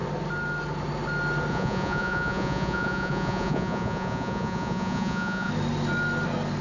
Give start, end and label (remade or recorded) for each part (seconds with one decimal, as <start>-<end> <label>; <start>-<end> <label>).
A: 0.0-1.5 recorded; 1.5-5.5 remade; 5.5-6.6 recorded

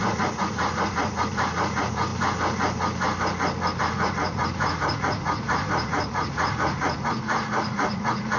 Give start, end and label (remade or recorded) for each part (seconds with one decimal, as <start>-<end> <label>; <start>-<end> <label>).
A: 0.0-2.1 remade; 2.1-3.8 recorded; 3.8-8.4 remade

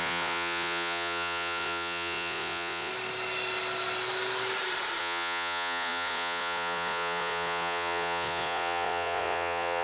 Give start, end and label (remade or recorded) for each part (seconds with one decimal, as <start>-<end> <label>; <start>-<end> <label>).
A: 0.0-2.9 remade; 2.9-5.0 recorded; 5.0-9.8 remade